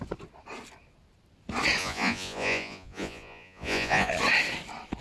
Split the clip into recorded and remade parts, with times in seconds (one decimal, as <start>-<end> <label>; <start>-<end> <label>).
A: 0.0-1.8 recorded; 1.8-4.1 remade; 4.1-5.0 recorded